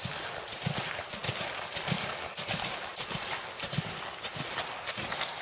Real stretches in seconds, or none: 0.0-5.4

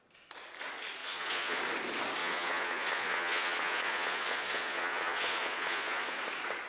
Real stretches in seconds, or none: 0.0-1.0; 1.6-2.2; 6.2-6.7